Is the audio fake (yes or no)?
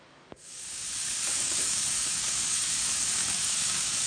yes